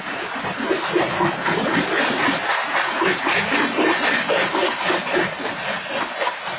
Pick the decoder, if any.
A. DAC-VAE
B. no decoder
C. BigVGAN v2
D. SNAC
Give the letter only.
B